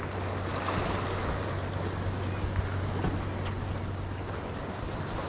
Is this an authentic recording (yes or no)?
yes